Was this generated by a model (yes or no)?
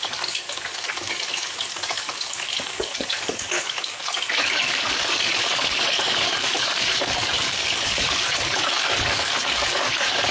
yes